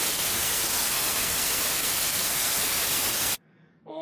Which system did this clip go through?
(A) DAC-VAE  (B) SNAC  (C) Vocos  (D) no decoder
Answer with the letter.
B